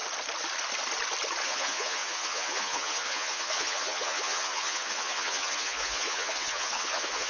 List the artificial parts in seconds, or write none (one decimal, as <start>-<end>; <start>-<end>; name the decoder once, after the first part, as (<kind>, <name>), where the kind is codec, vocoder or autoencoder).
1.4-7.3 (vocoder, Vocos)